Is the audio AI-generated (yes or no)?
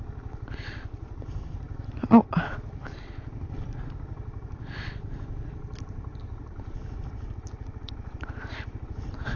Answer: no